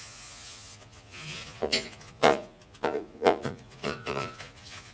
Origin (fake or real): fake